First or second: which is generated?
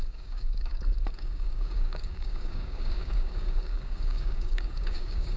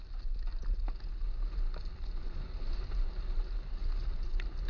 first